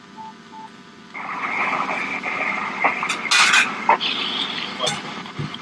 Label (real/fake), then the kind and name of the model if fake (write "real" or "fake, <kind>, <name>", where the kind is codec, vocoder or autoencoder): real